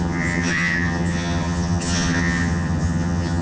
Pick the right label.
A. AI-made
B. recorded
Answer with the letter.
A